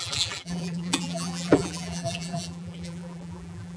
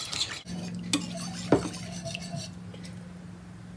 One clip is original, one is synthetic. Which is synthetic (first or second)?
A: first